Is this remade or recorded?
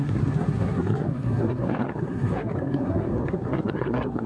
remade